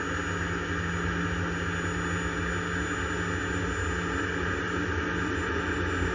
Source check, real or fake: real